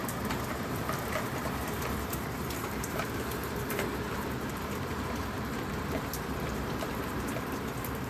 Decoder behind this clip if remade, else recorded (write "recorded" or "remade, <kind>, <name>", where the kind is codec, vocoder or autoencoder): remade, vocoder, BigVGAN v2